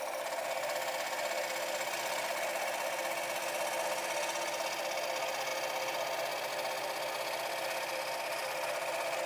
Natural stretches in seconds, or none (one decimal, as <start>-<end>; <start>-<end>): 0.0-9.3